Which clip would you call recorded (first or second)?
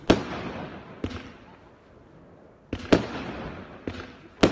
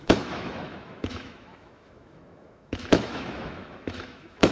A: first